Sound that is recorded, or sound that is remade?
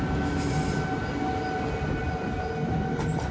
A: recorded